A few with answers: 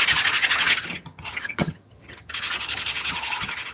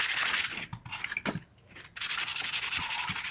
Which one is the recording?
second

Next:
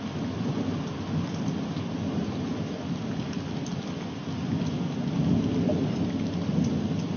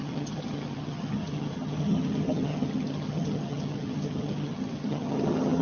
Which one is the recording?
first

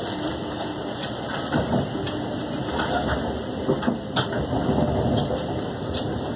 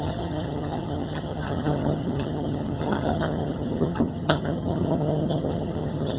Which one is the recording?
first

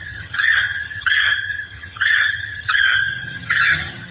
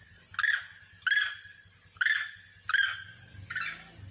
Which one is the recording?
second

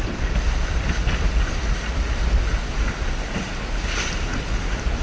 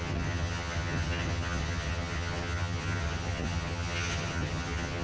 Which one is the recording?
first